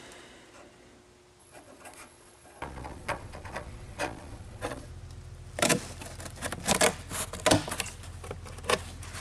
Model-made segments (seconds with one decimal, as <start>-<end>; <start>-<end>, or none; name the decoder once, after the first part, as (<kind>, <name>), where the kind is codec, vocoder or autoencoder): 1.4-4.9 (vocoder, Vocos)